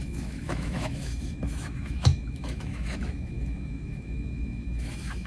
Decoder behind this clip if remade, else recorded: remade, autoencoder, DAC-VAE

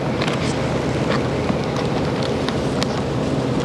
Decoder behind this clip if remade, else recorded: recorded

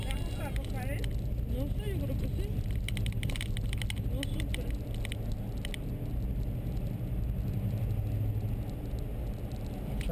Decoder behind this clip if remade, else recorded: recorded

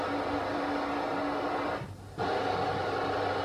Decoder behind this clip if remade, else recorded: recorded